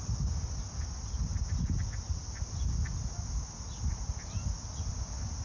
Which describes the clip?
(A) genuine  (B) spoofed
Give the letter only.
A